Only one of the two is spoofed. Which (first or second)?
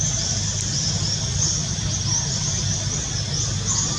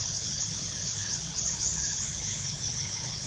second